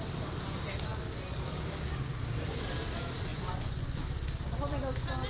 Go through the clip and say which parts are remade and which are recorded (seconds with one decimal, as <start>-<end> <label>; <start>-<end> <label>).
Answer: 0.0-3.3 recorded; 3.3-4.0 remade; 4.0-5.3 recorded